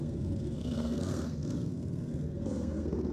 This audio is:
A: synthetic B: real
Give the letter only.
A